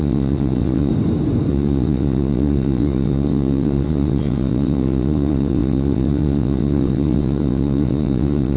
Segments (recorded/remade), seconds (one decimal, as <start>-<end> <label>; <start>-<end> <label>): 0.0-0.9 remade; 0.9-1.5 recorded; 1.5-8.6 remade